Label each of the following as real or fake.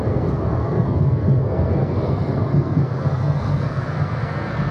fake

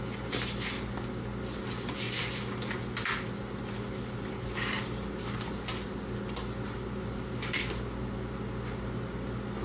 real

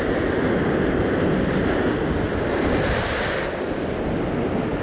real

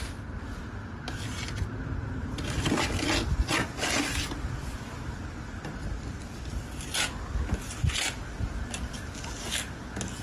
real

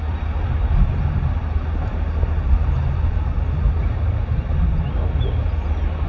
real